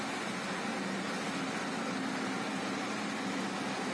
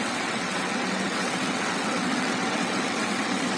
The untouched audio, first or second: first